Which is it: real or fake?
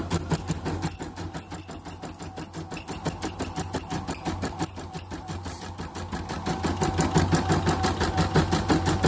real